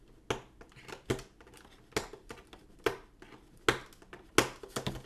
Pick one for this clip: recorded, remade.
recorded